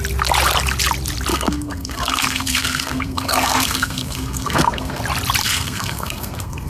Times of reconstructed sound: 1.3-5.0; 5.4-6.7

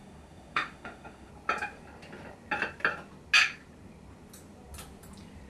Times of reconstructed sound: 0.0-1.3

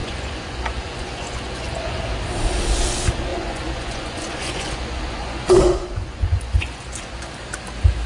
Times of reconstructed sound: 0.0-2.0; 3.3-7.3